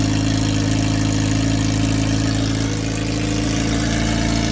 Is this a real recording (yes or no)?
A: yes